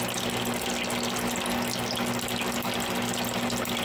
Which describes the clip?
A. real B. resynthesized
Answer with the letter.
A